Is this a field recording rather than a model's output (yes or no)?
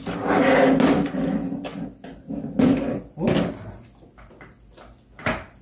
yes